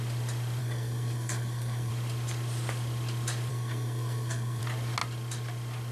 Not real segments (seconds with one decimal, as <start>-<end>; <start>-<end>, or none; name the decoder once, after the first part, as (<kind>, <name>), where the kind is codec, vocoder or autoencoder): 0.6-1.9 (codec, SNAC); 3.5-4.6